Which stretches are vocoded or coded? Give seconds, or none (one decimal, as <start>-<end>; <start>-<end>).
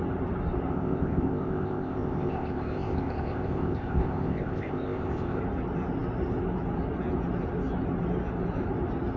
0.7-5.4